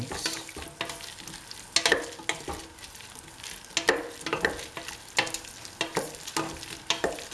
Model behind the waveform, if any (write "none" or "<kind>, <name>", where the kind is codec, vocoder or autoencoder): none